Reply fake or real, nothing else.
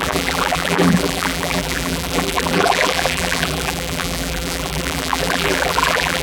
fake